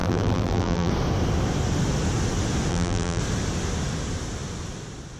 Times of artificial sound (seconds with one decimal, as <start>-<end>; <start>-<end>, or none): 0.0-0.9; 2.7-3.2